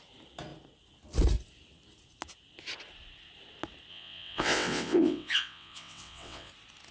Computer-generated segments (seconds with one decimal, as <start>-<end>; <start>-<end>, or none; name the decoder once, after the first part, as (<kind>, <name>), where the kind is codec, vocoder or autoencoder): 3.9-6.5 (vocoder, WaveNeXt)